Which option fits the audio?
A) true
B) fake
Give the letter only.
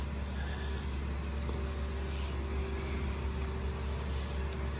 A